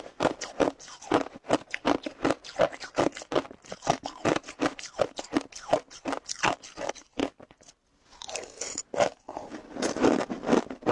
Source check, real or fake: real